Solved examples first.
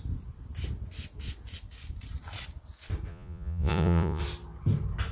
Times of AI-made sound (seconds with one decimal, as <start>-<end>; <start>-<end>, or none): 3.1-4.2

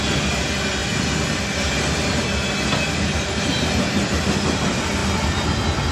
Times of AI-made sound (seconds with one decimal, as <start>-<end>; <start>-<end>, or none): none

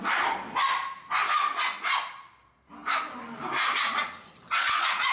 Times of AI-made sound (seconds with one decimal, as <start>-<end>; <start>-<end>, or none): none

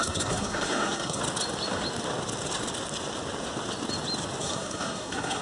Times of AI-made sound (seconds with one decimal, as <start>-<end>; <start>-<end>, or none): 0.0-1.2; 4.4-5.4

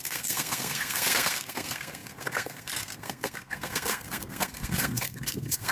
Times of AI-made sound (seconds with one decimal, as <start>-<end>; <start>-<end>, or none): 0.0-5.7

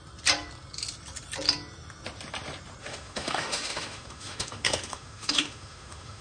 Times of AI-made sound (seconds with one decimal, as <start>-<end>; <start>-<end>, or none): 2.8-6.2